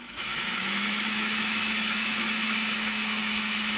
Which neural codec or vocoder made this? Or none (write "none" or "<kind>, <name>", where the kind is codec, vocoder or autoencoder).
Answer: autoencoder, DAC-VAE